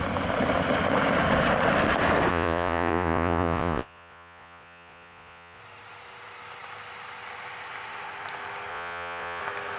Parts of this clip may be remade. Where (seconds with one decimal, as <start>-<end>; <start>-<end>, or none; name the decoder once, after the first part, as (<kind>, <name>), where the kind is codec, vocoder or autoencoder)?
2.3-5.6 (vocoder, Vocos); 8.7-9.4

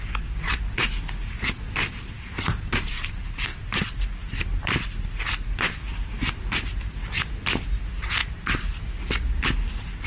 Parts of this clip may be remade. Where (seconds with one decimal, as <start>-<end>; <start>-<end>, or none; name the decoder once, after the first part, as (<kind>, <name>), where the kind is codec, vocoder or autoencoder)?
none

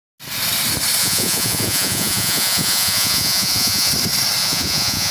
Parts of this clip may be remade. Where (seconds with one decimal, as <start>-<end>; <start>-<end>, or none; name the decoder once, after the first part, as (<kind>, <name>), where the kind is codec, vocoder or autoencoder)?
1.0-3.9 (vocoder, Vocos); 4.4-5.1

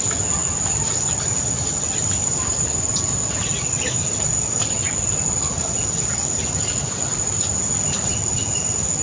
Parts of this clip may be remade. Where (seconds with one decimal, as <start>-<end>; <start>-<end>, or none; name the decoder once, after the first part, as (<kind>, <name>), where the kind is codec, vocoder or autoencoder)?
none

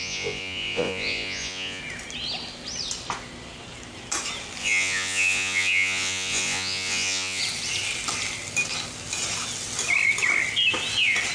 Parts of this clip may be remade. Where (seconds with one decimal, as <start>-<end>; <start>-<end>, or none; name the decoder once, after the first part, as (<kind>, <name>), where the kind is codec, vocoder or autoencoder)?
0.0-1.8 (vocoder, Vocos); 4.6-7.4